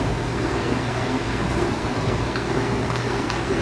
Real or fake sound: fake